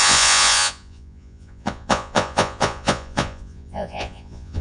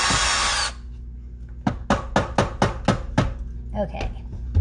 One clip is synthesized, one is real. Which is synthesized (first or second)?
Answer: first